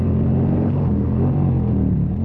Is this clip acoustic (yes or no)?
no